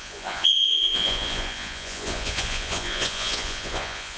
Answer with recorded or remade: remade